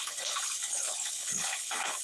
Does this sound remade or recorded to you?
remade